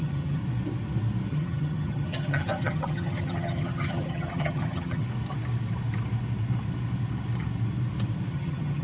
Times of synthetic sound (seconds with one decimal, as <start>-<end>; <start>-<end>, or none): 0.0-0.4; 1.3-5.0; 8.3-8.8